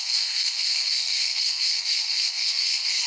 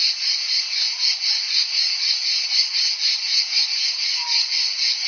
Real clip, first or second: second